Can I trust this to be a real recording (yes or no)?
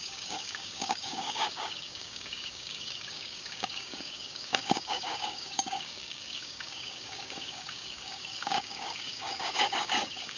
no